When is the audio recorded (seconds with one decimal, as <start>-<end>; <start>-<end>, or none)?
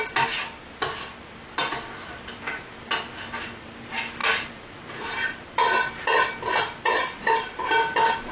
0.0-8.3